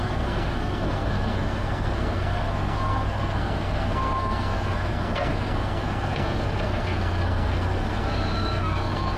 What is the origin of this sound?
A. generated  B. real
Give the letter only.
A